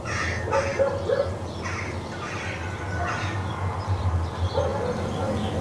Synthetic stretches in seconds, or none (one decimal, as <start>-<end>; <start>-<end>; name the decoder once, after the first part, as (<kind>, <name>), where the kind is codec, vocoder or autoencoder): none